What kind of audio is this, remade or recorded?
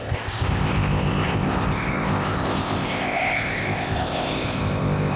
remade